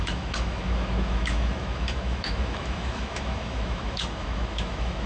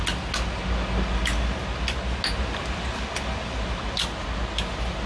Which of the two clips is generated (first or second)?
first